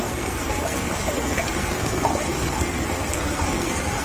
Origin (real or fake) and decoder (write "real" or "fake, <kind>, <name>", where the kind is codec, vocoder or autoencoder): fake, codec, SNAC